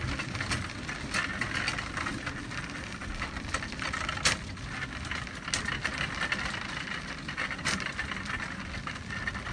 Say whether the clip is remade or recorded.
recorded